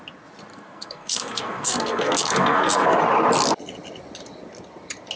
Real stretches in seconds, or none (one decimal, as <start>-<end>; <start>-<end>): 0.0-0.5; 3.0-5.2